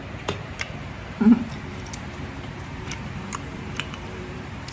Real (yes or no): no